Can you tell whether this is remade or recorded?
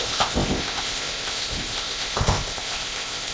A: remade